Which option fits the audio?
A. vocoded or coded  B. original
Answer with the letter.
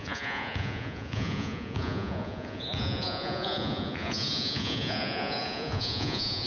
A